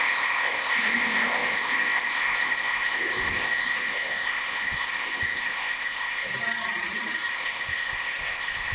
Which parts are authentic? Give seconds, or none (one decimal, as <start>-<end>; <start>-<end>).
6.3-7.3